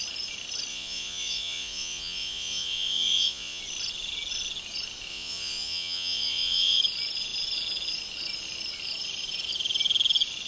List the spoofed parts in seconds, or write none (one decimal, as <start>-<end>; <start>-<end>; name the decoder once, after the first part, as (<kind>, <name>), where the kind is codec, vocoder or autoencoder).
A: 0.7-3.6 (vocoder, Vocos); 5.1-6.8